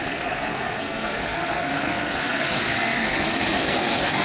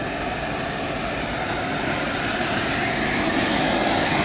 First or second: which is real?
second